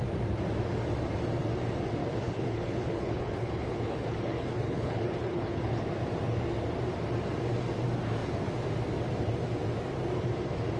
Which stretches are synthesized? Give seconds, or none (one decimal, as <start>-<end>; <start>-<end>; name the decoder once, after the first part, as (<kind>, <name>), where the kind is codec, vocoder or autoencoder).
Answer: 2.0-5.8 (codec, HILCodec)